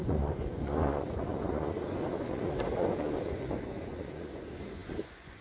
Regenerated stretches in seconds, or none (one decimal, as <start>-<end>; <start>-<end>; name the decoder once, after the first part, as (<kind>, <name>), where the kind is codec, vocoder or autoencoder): 0.0-5.4 (vocoder, Vocos)